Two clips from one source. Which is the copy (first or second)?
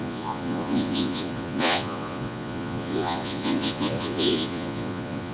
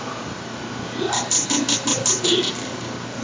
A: first